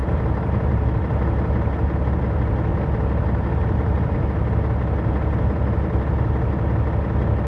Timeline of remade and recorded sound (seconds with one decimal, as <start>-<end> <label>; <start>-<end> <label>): 0.0-1.0 remade; 1.0-2.7 recorded; 2.7-4.2 remade; 4.2-7.5 recorded